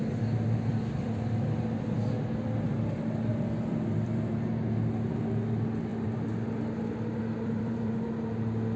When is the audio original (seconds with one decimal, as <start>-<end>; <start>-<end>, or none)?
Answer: 0.0-0.7; 4.3-5.9; 7.9-8.8